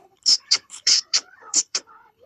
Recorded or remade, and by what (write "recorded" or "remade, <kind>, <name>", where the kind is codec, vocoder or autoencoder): remade, codec, HILCodec